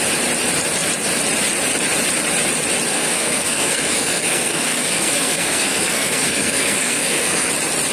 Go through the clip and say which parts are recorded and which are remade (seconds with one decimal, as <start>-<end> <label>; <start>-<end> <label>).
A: 0.0-2.9 recorded; 2.9-7.5 remade; 7.5-7.9 recorded